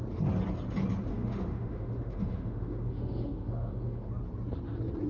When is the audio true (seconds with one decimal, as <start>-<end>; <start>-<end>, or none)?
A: 0.0-1.1; 4.1-5.1